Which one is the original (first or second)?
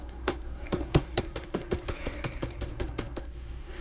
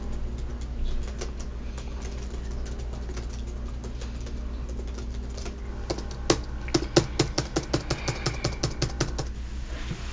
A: second